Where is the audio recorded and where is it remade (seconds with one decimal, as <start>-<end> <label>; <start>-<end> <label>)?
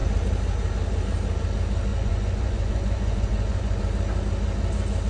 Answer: 0.0-1.9 recorded; 1.9-3.8 remade; 3.8-5.1 recorded